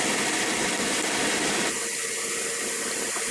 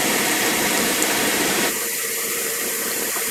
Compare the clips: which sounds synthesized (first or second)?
second